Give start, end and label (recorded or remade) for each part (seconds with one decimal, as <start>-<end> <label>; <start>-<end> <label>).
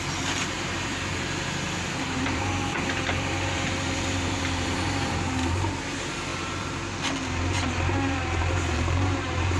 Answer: 0.0-9.6 remade